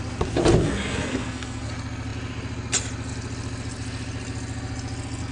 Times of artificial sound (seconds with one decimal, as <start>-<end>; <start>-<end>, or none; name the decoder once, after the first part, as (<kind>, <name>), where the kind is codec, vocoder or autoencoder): 0.6-1.7 (codec, SNAC)